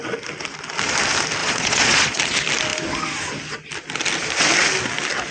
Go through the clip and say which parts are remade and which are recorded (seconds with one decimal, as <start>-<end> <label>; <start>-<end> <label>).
0.0-1.4 recorded; 1.4-2.2 remade; 2.2-5.3 recorded